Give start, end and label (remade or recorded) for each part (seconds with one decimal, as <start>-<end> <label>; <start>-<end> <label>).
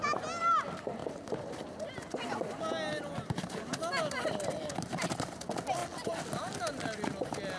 0.0-2.9 recorded; 2.9-4.5 remade; 4.5-7.6 recorded